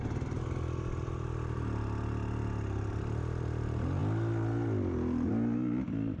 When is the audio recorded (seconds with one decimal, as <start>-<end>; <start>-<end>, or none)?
0.0-6.2